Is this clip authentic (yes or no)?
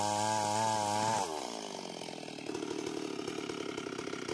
yes